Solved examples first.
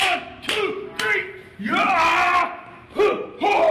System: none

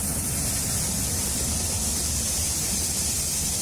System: none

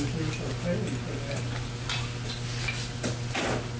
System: none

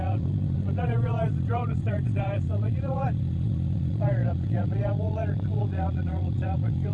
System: vocoder, Vocos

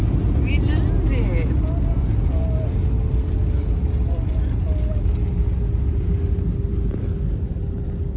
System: none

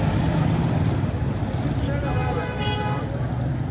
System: none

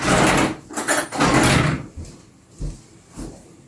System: none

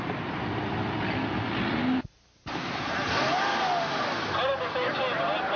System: none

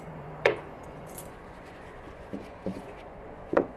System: vocoder, Vocos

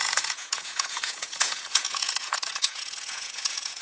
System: vocoder, Vocos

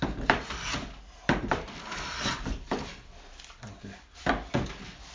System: none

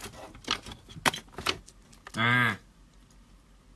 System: none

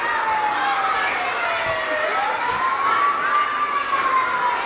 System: none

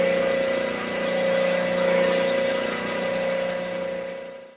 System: none